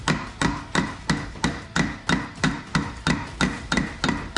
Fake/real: real